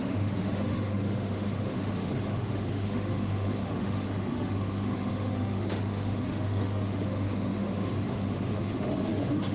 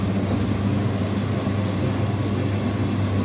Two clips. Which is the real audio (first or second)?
second